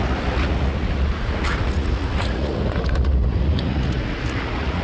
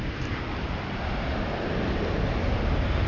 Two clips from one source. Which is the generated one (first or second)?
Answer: first